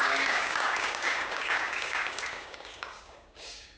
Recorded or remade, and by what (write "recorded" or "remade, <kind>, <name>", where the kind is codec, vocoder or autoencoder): remade, codec, DAC